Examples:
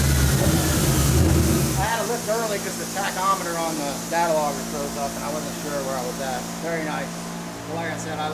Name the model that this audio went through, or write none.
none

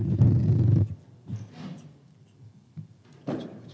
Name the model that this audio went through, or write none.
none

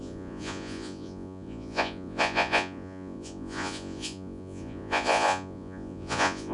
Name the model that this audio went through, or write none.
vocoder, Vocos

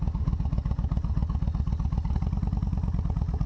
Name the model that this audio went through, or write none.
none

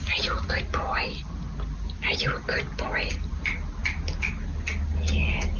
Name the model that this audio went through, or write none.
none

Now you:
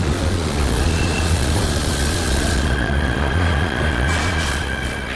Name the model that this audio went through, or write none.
vocoder, Vocos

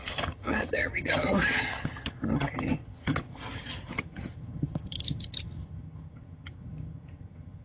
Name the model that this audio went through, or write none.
vocoder, HiFi-GAN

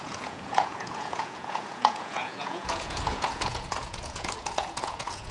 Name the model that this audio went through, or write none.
vocoder, Vocos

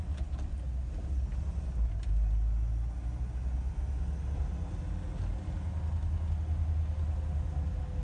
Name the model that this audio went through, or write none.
none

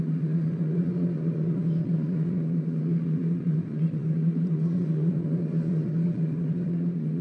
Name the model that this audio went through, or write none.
vocoder, Vocos